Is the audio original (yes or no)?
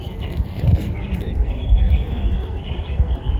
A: no